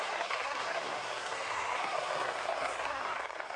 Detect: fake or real fake